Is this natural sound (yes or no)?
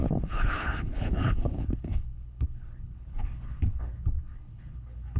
no